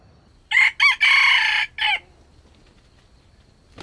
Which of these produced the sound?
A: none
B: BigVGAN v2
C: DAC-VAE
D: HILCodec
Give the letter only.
A